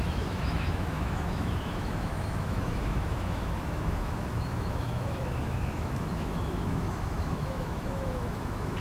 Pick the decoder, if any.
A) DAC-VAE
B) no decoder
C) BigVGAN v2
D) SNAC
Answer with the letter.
A